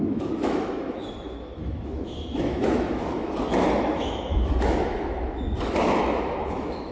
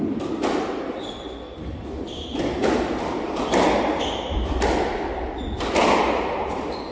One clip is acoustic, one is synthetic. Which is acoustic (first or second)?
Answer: second